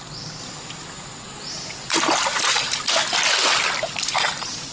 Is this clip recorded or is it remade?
recorded